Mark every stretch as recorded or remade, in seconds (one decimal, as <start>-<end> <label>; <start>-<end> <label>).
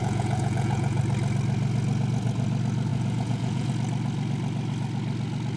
0.0-1.0 remade; 1.0-2.9 recorded; 2.9-3.7 remade; 3.7-5.6 recorded